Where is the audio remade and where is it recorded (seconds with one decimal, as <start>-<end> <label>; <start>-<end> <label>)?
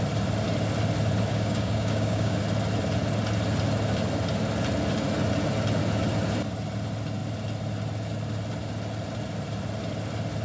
0.0-1.3 recorded; 1.3-2.4 remade; 2.4-10.4 recorded